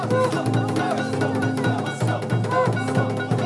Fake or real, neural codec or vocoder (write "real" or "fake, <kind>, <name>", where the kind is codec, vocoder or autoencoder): real